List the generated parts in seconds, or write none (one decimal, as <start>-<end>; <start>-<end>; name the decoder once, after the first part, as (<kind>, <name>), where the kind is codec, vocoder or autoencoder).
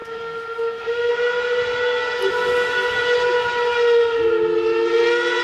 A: 0.0-1.1 (codec, SNAC)